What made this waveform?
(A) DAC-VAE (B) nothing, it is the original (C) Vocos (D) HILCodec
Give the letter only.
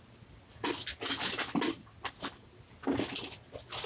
B